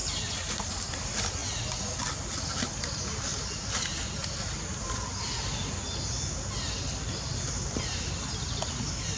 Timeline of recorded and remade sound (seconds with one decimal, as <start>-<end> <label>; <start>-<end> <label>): 0.0-0.9 remade; 0.9-9.2 recorded